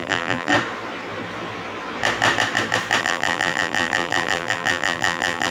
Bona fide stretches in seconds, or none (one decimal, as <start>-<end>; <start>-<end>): 0.5-3.0